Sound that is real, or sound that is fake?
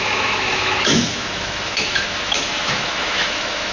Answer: fake